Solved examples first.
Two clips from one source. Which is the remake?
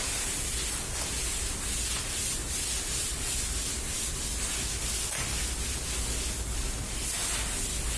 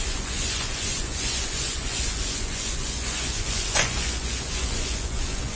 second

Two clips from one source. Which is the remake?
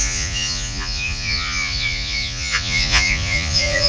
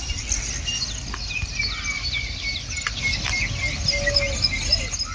first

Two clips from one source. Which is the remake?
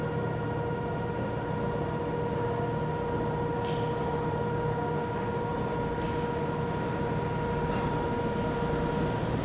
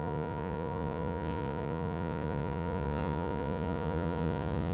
second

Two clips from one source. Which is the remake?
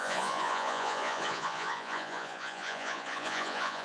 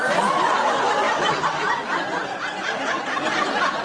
first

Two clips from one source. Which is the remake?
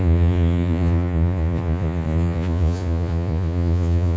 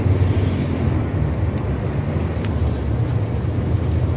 first